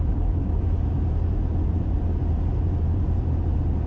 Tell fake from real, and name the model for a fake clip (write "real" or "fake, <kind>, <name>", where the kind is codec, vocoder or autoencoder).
fake, vocoder, BigVGAN v2